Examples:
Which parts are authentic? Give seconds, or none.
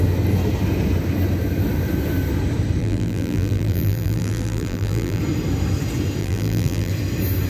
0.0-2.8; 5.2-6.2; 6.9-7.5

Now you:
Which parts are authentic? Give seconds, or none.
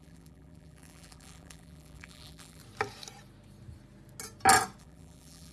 2.6-4.8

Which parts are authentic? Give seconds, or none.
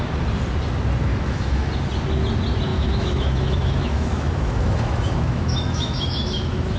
0.0-1.1; 1.7-2.7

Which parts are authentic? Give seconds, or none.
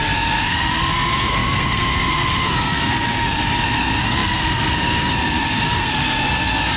none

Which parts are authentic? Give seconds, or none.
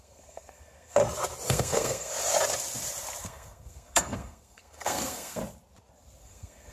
1.0-1.5; 2.1-3.2; 5.4-6.2